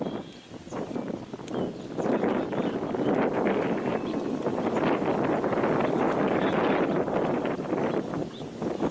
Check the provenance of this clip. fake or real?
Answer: real